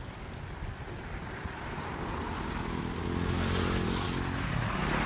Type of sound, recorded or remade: recorded